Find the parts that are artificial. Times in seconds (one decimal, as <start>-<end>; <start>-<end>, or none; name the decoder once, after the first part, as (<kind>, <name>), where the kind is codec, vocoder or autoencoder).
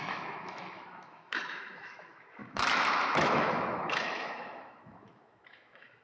0.0-6.0 (autoencoder, DAC-VAE)